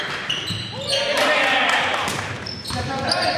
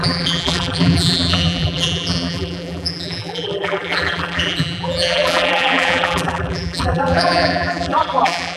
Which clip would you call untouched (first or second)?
first